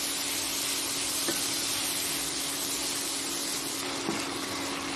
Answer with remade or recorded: recorded